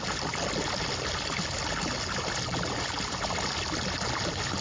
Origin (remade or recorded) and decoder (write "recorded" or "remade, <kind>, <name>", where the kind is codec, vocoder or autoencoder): recorded